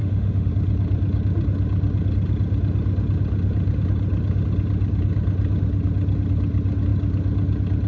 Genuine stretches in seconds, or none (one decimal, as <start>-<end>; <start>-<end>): 0.5-7.9